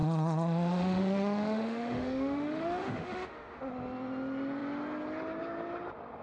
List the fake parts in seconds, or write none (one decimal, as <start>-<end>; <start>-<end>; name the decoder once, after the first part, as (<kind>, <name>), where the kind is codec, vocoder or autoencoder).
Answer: 0.0-3.7 (autoencoder, DAC-VAE)